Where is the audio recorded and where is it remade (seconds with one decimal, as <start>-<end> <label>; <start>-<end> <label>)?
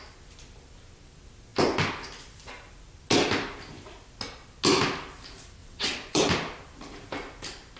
0.0-5.6 recorded; 5.6-6.2 remade; 6.2-7.8 recorded